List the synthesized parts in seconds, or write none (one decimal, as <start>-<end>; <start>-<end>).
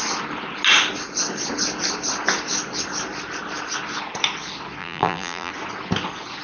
4.8-5.5